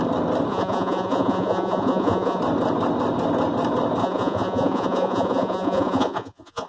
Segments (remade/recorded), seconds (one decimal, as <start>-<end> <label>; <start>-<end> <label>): 0.0-0.5 recorded; 0.5-2.4 remade; 2.4-4.0 recorded; 4.0-6.7 remade